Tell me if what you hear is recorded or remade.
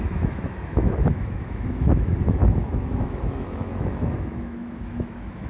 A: remade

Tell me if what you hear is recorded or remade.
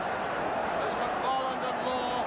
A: recorded